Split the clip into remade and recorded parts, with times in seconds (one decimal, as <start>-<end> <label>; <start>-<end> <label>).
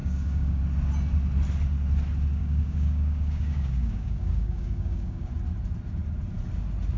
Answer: 0.0-0.6 remade; 0.6-2.4 recorded; 2.4-5.3 remade; 5.3-7.0 recorded